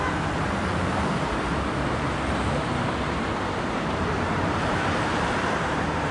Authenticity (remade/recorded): remade